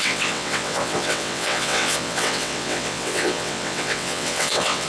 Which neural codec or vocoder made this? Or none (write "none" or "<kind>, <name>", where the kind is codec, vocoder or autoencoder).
vocoder, WaveNeXt